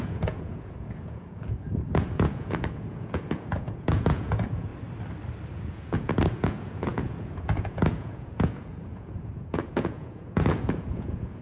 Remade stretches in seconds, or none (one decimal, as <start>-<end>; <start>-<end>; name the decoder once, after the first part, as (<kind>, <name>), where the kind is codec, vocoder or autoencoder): 0.0-4.7 (vocoder, Vocos); 5.5-11.4